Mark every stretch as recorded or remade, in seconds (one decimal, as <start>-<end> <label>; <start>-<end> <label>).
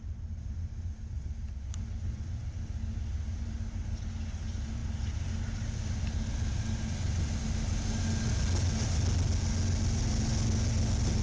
0.0-11.2 recorded